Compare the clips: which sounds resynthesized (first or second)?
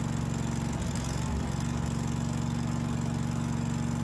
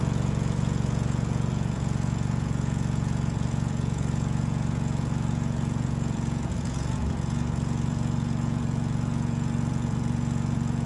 second